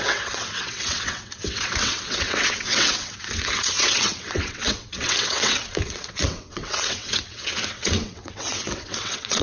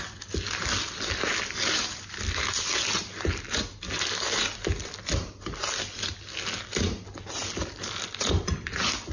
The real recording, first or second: second